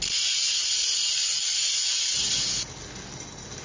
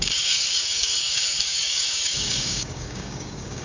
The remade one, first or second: second